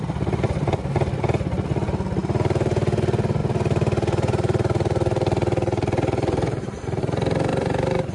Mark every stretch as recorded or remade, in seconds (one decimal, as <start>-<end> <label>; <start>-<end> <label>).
0.0-2.2 recorded; 2.2-3.0 remade; 3.0-3.4 recorded; 3.4-7.0 remade; 7.0-7.5 recorded; 7.5-8.1 remade